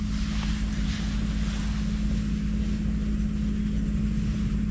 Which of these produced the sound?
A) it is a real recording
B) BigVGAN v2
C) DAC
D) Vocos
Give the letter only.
A